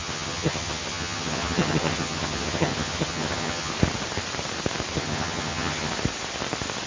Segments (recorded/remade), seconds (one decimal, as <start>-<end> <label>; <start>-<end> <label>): 0.0-3.7 remade; 3.7-4.9 recorded; 4.9-5.9 remade; 5.9-6.9 recorded